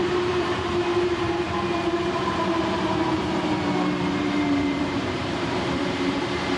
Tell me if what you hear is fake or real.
fake